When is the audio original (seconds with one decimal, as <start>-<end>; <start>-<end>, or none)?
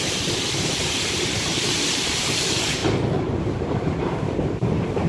2.8-3.4